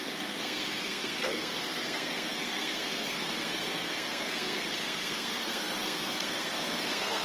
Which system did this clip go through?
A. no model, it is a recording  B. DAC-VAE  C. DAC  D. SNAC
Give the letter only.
D